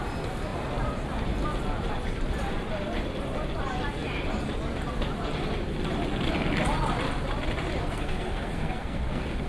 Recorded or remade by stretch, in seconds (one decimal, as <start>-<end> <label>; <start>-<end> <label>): 0.0-7.8 recorded; 7.8-9.5 remade